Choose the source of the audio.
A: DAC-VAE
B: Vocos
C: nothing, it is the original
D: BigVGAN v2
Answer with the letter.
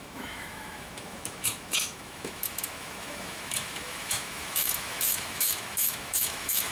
A